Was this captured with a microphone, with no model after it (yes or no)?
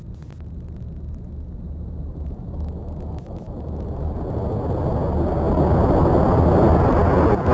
yes